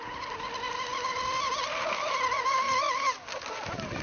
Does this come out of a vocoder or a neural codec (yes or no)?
no